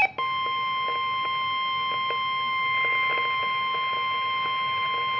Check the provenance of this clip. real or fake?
real